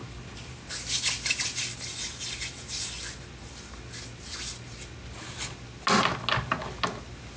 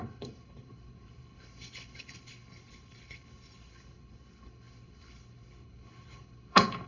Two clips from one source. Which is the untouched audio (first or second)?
first